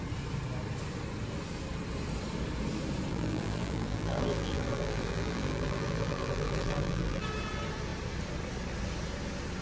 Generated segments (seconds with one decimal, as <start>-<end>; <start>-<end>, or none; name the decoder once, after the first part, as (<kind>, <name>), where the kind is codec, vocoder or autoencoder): 3.1-7.2 (vocoder, BigVGAN v2)